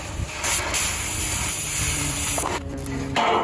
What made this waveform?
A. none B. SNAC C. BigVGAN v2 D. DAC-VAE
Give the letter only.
A